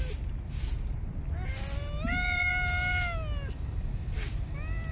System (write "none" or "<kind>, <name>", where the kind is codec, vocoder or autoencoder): none